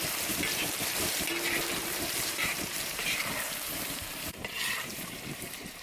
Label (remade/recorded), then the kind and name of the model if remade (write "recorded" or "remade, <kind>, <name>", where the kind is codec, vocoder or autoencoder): remade, vocoder, BigVGAN v2